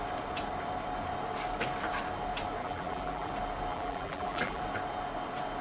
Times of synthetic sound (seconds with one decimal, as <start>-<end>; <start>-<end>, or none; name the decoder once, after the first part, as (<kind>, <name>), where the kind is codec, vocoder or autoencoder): 2.6-3.3 (vocoder, BigVGAN v2); 3.7-4.6